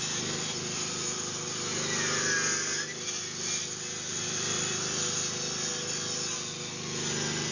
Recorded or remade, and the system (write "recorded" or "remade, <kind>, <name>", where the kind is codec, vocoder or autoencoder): recorded